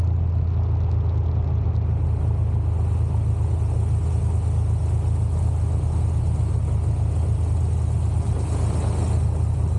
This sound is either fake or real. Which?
real